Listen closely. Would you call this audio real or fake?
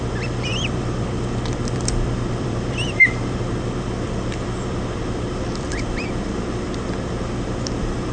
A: fake